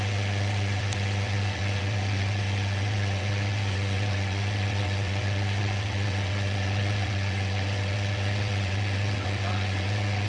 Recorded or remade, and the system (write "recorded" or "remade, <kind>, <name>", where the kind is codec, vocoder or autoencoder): remade, vocoder, WaveNeXt